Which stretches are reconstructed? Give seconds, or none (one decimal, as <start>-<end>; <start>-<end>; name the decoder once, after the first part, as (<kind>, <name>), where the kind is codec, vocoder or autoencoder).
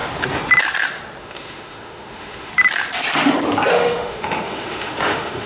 1.2-2.5 (autoencoder, DAC-VAE); 3.7-5.5